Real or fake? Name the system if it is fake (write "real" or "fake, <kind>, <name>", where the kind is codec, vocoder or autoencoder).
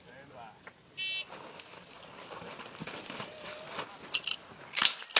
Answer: real